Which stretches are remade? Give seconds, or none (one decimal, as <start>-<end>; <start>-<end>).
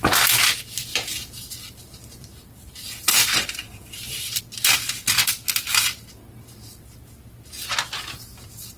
0.9-4.4